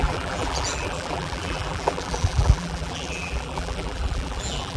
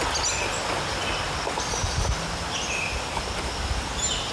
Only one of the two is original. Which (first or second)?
second